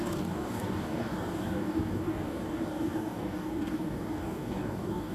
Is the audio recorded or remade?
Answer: remade